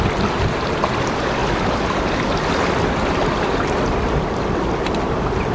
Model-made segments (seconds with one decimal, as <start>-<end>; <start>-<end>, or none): 1.4-4.7